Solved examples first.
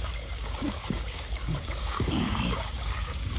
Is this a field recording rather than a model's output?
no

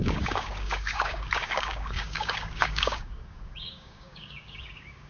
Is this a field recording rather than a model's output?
no